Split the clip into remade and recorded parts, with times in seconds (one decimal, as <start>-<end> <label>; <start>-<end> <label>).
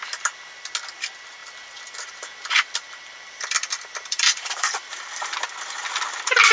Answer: 0.0-1.4 recorded; 1.4-5.3 remade; 5.3-6.5 recorded